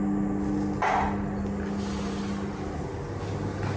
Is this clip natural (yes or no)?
yes